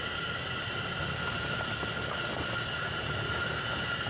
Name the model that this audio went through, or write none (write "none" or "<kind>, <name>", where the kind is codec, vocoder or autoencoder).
none